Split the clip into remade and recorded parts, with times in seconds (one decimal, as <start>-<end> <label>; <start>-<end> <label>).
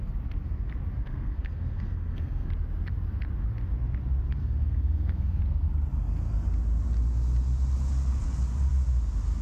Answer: 0.0-1.0 recorded; 1.0-2.5 remade; 2.5-4.4 recorded; 4.4-5.4 remade; 5.4-9.4 recorded